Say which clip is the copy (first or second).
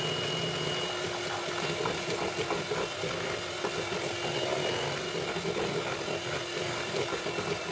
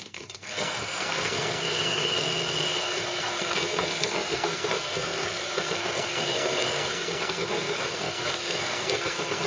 second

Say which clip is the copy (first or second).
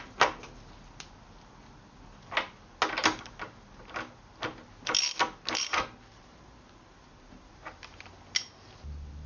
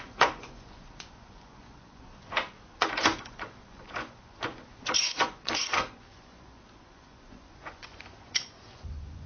second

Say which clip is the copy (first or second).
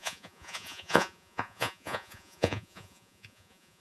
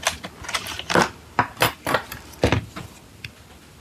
first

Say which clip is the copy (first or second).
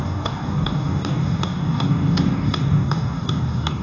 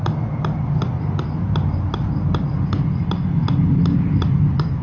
first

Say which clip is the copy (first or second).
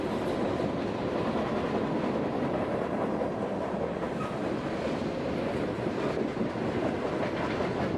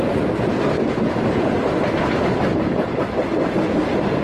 second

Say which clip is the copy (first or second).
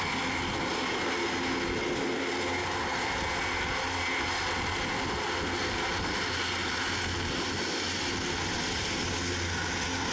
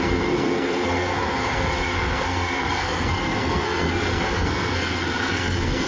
second